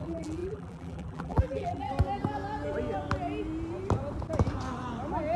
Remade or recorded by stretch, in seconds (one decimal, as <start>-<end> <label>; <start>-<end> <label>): 0.0-1.9 remade; 1.9-5.4 recorded